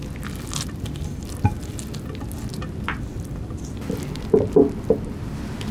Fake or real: real